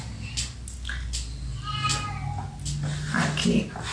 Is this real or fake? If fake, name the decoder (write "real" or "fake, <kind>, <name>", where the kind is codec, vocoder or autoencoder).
real